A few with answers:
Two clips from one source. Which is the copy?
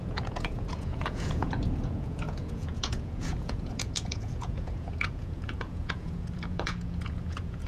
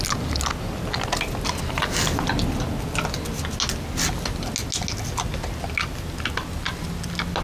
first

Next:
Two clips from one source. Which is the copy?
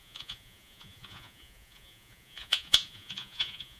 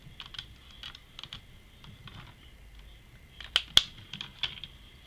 first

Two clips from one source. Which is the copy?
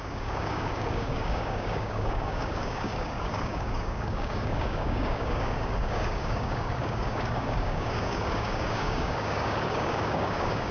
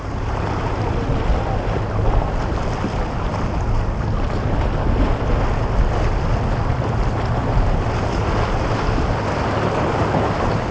first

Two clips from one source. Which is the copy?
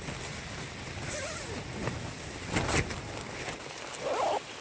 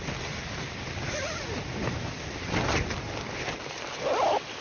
second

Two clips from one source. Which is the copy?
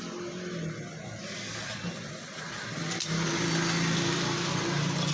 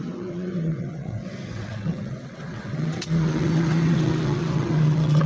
second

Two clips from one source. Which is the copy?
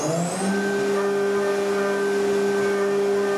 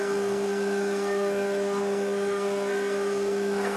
second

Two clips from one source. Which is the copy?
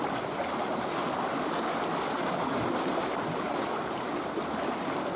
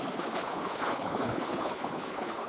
second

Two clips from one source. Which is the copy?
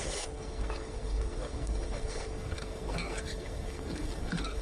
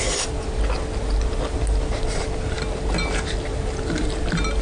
first